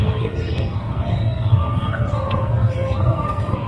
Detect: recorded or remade remade